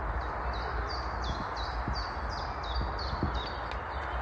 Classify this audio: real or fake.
real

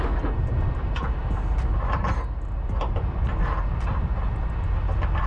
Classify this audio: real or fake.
real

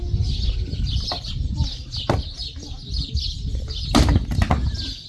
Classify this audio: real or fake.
real